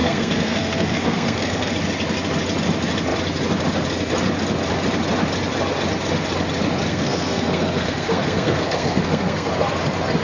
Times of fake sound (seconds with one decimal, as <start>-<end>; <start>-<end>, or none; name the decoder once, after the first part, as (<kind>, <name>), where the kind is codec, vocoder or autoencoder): 0.0-1.7 (codec, SNAC); 6.9-9.5